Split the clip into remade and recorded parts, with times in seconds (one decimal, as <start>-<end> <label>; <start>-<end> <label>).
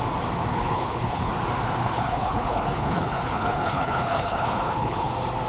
0.0-0.5 recorded; 0.5-1.3 remade; 1.3-1.8 recorded; 1.8-5.1 remade; 5.1-5.5 recorded